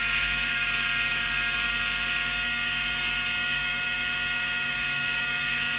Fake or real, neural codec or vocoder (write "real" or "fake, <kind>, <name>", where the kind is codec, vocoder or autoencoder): fake, codec, DAC